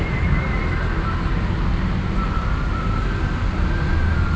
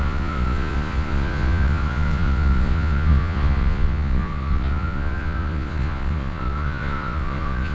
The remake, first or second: second